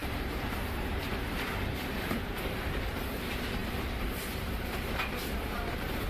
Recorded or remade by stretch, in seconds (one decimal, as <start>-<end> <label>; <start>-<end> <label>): 0.0-6.1 remade